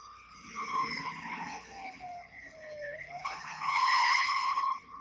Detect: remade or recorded remade